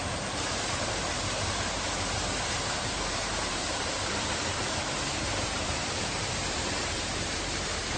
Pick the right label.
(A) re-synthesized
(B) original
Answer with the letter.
A